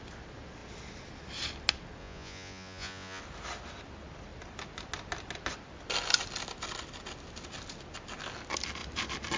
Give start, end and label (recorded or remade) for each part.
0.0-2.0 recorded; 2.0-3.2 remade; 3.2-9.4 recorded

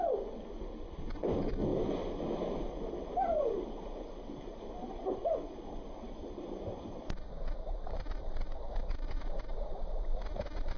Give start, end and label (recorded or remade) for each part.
0.0-5.2 recorded; 5.2-9.5 remade; 9.5-10.8 recorded

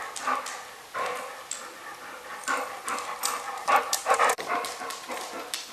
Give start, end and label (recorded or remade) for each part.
0.0-3.6 recorded; 3.6-4.5 remade; 4.5-5.7 recorded

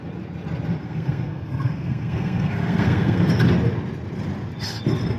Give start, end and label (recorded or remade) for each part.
0.0-0.8 recorded; 0.8-3.4 remade; 3.4-5.2 recorded